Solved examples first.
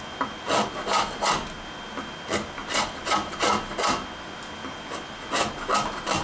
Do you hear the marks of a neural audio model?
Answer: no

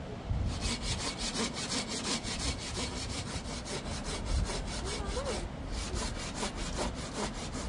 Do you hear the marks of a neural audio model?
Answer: no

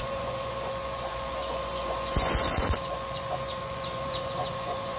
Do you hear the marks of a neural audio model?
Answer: yes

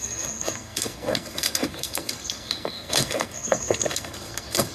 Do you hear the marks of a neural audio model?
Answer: yes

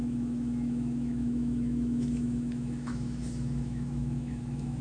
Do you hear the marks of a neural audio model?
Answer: yes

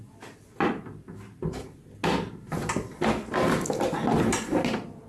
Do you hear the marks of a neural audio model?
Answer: no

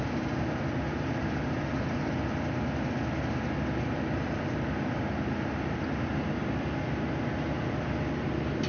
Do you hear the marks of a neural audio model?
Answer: no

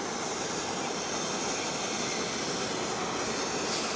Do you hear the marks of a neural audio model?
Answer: no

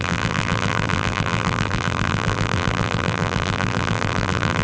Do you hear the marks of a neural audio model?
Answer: yes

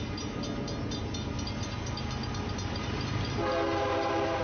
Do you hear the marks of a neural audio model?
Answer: no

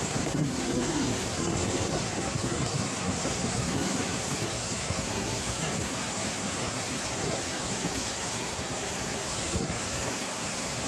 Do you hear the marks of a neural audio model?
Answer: yes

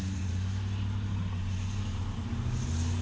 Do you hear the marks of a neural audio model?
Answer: no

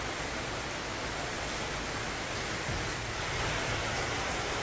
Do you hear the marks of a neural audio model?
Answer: no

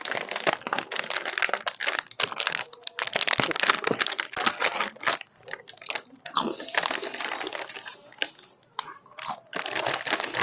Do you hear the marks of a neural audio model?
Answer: no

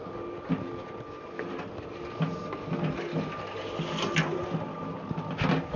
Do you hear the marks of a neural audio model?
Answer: no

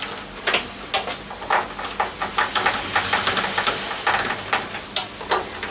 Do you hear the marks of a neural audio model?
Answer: no